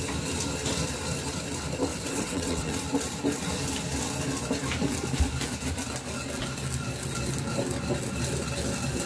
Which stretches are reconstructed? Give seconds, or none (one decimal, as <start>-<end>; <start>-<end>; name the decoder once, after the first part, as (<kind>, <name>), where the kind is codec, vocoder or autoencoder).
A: 1.9-2.7 (vocoder, WaveNeXt)